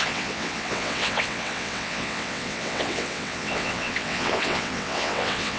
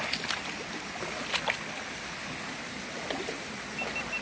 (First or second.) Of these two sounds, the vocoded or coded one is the first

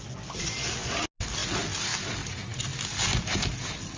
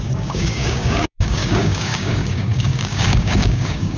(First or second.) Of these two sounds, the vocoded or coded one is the second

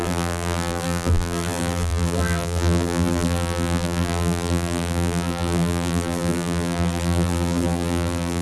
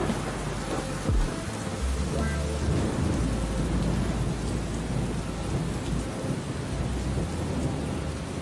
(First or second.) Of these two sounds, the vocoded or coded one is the first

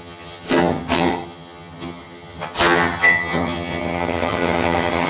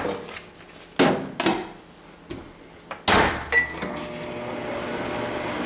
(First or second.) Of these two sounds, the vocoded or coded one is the first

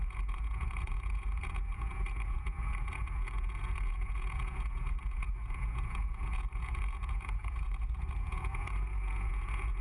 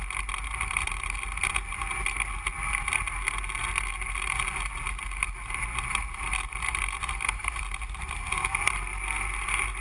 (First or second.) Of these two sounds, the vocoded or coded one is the first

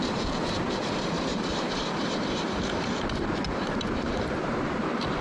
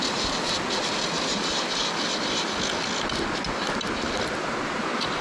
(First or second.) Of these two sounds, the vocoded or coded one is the first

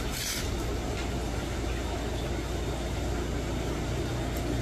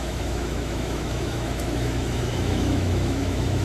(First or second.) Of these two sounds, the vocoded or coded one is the second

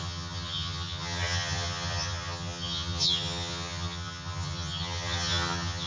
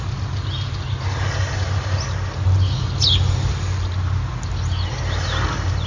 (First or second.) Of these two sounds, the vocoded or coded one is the first